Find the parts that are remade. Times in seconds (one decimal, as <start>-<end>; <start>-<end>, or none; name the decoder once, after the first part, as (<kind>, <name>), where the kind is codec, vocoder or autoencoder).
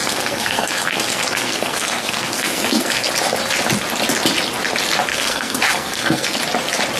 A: 0.0-3.1 (codec, SNAC); 5.1-6.4